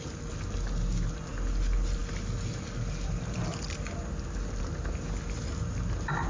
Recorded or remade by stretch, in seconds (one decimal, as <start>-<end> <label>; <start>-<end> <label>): 0.0-6.3 recorded